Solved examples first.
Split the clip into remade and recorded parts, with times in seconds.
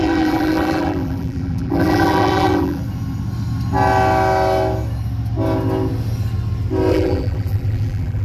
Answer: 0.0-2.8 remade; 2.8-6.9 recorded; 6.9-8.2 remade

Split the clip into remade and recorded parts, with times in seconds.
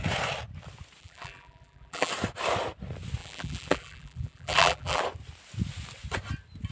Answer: 0.0-1.0 recorded; 1.0-2.1 remade; 2.1-3.2 recorded; 3.2-5.0 remade; 5.0-6.7 recorded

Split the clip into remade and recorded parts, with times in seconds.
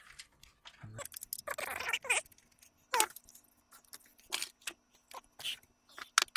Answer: 0.0-6.4 recorded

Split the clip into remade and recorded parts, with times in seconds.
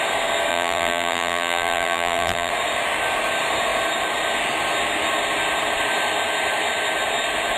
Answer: 0.0-0.5 recorded; 0.5-2.5 remade; 2.5-7.6 recorded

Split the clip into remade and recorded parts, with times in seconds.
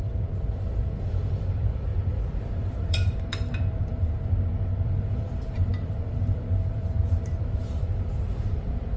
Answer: 0.0-9.0 remade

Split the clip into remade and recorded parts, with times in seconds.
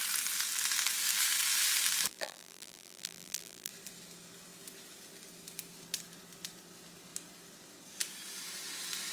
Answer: 0.0-2.1 recorded; 2.1-3.7 remade; 3.7-9.1 recorded